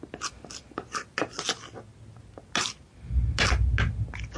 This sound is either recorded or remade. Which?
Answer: recorded